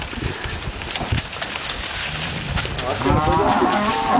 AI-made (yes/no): no